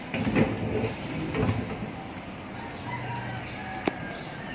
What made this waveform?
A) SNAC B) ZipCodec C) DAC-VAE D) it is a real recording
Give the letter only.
D